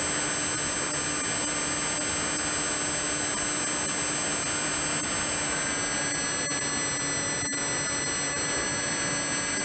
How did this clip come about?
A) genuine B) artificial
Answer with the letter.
A